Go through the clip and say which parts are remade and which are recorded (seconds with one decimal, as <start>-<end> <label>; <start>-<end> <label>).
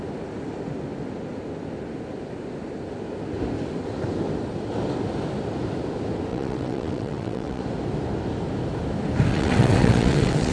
0.0-6.3 recorded; 6.3-7.6 remade; 7.6-9.3 recorded; 9.3-10.5 remade